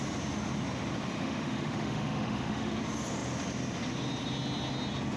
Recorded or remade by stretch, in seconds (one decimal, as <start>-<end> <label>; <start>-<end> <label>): 0.0-1.2 recorded; 1.2-2.7 remade; 2.7-5.2 recorded